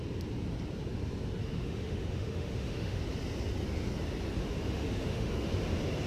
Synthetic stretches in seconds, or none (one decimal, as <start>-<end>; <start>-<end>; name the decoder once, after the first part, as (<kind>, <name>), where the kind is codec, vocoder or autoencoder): 1.4-3.0 (autoencoder, DAC-VAE); 4.4-5.5